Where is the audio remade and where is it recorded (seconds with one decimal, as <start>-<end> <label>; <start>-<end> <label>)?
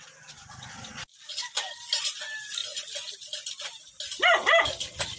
0.0-5.2 recorded